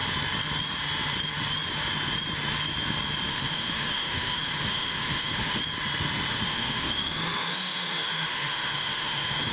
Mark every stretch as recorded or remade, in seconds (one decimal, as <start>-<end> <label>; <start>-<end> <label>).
0.0-3.3 recorded; 3.3-5.6 remade; 5.6-6.3 recorded; 6.3-9.5 remade